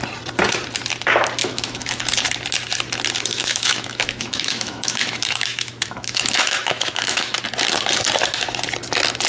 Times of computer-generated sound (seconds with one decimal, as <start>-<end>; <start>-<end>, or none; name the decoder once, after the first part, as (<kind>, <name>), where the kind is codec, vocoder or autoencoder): 1.4-2.0 (autoencoder, DAC-VAE); 3.3-7.4